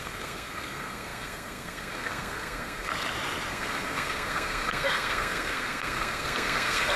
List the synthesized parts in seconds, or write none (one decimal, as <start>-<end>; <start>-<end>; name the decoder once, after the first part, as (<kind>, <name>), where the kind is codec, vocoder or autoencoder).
0.0-2.9 (codec, SNAC); 3.5-7.0